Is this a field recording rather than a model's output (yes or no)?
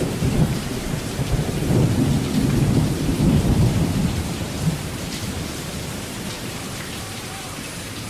no